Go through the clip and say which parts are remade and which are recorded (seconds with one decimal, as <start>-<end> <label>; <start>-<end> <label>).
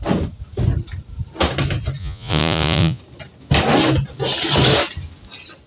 0.0-2.0 recorded; 2.0-3.0 remade; 3.0-5.7 recorded